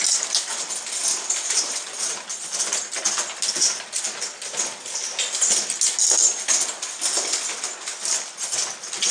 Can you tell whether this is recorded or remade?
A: recorded